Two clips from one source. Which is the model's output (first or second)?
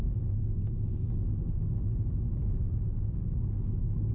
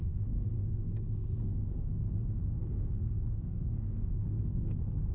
second